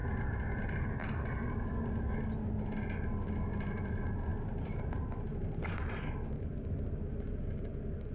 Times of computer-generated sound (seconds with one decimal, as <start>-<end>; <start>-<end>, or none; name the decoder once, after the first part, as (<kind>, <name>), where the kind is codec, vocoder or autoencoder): none

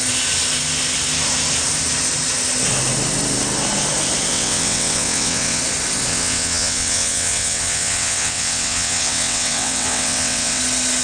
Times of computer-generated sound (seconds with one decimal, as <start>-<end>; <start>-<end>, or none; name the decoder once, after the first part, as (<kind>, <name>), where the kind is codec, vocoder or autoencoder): 4.3-5.6 (vocoder, WaveNeXt); 6.1-10.6

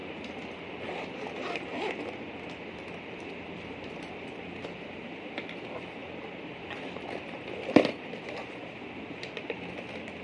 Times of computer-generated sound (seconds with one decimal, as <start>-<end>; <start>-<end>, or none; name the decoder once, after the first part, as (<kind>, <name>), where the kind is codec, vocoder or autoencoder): 0.0-3.7 (vocoder, BigVGAN v2); 6.0-8.2

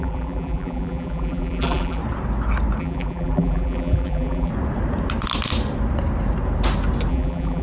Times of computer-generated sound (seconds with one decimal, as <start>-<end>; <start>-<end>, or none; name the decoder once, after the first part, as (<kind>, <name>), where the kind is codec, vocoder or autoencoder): 0.0-2.0 (vocoder, BigVGAN v2); 2.8-4.5; 7.1-7.6

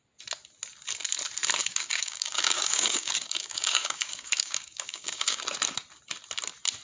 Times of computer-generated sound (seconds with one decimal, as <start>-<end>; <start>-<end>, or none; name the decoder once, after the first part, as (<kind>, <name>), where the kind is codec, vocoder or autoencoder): 1.6-5.4 (codec, DAC)